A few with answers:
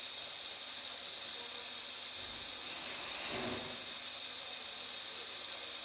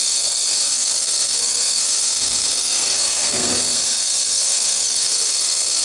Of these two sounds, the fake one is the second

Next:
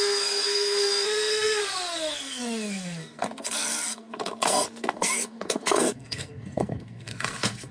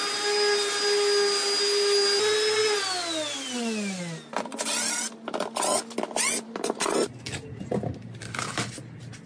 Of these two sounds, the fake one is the first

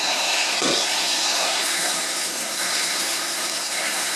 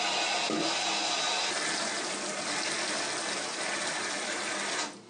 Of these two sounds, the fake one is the first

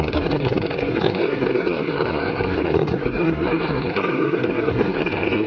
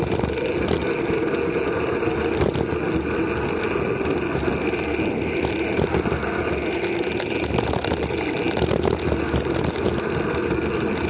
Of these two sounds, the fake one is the first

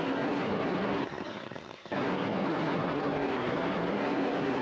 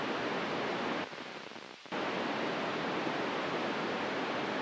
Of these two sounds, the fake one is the first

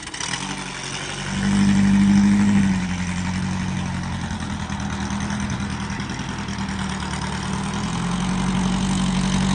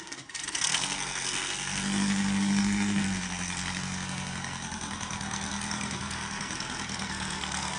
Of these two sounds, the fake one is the second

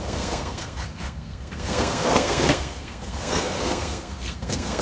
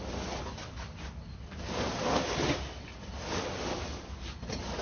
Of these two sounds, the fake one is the first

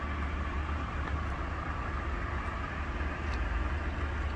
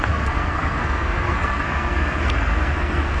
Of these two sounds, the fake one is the second